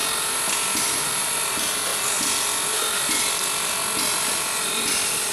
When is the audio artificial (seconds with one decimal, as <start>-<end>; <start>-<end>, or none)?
0.8-1.9